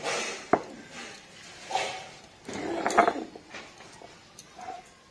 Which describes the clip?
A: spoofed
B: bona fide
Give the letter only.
B